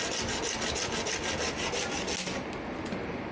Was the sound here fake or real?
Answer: real